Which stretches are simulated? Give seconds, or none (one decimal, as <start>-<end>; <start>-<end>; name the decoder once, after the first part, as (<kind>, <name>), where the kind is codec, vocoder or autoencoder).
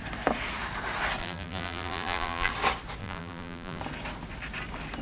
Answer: 1.2-2.5 (vocoder, BigVGAN v2); 3.0-3.8